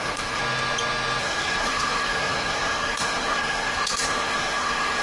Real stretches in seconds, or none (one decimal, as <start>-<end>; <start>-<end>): 0.4-1.2